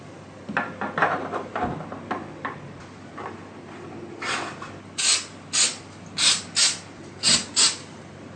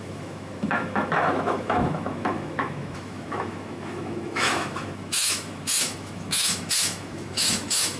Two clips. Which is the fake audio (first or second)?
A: second